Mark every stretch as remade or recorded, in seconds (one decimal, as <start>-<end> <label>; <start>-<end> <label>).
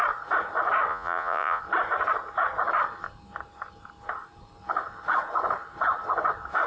0.0-0.9 recorded; 0.9-1.6 remade; 1.6-6.7 recorded